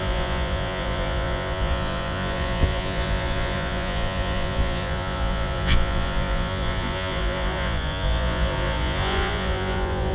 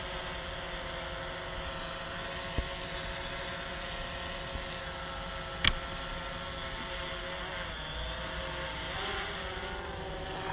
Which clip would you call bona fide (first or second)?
second